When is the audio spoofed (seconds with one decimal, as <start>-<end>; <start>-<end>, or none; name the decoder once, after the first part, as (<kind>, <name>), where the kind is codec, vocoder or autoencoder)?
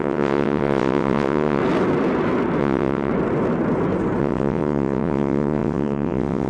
0.0-1.6 (vocoder, WaveNeXt); 2.6-3.1; 4.2-6.5